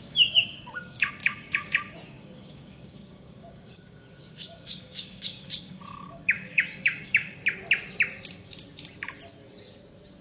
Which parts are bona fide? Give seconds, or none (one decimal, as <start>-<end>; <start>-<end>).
7.4-10.2